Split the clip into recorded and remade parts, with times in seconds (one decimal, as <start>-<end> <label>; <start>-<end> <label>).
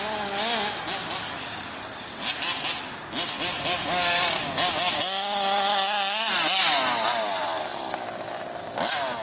0.0-9.2 recorded